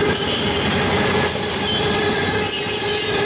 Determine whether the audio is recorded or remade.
recorded